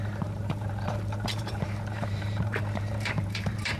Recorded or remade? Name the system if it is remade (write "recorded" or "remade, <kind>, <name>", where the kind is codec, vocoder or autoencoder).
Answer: remade, vocoder, BigVGAN v2